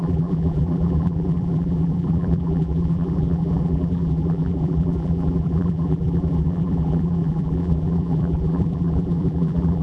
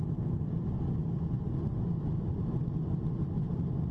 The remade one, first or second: first